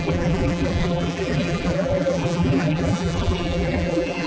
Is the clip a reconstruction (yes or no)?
yes